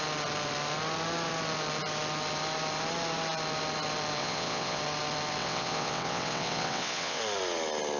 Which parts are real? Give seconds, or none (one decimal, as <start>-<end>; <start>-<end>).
0.0-4.2; 4.8-5.4; 7.2-8.0